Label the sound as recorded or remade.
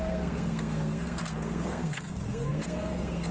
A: remade